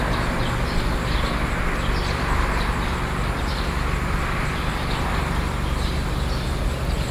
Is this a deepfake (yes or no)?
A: no